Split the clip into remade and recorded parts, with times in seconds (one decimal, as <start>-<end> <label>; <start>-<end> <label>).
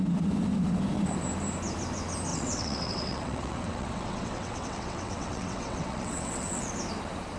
0.0-2.3 recorded; 2.3-6.7 remade; 6.7-7.4 recorded